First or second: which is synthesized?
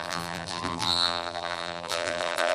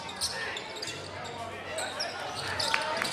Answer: first